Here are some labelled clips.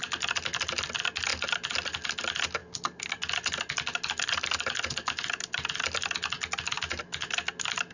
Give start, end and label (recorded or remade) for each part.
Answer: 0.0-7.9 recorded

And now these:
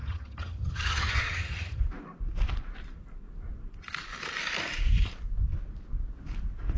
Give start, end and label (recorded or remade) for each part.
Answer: 0.0-1.8 remade; 1.8-6.8 recorded

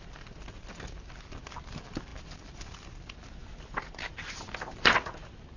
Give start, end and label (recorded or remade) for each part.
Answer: 0.0-5.6 recorded